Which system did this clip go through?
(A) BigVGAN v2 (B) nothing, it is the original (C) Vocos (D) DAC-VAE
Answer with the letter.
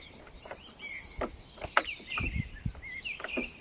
B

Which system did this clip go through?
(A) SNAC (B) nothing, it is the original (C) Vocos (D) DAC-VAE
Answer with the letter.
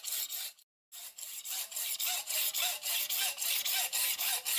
B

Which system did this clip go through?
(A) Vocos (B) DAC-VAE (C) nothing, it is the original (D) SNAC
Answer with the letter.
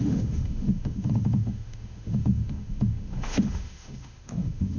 B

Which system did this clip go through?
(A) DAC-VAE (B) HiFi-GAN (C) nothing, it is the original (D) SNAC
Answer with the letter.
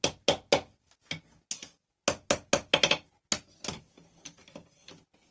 C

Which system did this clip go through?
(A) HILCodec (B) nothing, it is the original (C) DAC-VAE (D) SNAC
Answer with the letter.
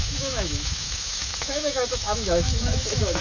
C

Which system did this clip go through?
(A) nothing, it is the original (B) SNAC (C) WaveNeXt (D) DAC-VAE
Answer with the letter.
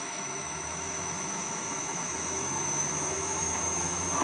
D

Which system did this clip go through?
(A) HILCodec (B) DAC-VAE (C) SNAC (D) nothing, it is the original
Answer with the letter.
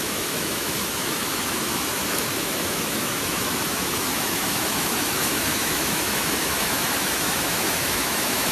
B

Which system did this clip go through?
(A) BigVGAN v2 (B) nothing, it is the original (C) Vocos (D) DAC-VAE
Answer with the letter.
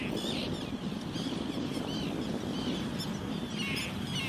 B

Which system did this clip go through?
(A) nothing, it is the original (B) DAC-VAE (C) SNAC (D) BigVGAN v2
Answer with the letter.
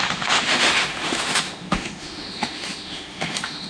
B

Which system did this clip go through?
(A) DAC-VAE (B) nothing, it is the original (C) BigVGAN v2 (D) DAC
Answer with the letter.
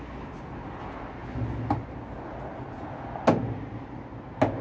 B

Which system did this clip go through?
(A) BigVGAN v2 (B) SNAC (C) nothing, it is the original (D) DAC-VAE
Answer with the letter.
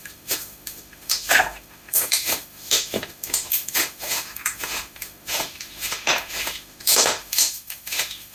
D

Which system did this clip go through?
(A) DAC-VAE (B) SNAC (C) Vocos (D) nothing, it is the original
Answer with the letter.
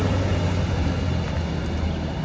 D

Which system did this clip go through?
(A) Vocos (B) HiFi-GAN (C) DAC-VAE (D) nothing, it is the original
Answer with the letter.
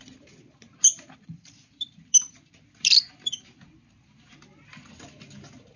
D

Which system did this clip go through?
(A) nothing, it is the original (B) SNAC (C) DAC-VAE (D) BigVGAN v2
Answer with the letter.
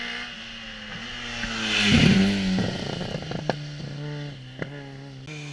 A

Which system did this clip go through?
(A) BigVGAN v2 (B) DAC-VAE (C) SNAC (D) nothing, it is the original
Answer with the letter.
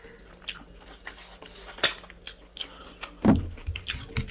D